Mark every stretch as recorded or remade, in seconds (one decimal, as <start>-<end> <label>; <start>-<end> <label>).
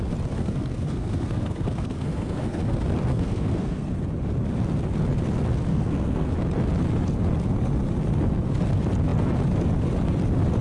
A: 0.0-0.4 recorded; 0.4-2.6 remade; 2.6-3.1 recorded; 3.1-4.0 remade; 4.0-5.7 recorded; 5.7-6.3 remade; 6.3-10.6 recorded